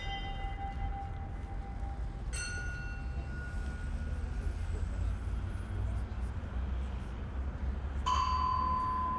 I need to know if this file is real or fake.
real